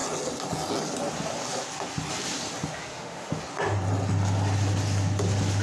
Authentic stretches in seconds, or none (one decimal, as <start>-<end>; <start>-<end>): 0.0-2.9; 3.4-5.6